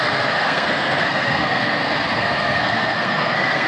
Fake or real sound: fake